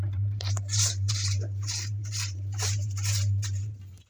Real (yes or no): no